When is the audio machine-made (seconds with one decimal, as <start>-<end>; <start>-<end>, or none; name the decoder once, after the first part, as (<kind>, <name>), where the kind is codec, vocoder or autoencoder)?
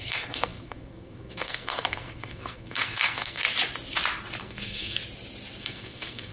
0.0-3.4 (codec, SNAC); 4.4-5.0; 5.6-6.3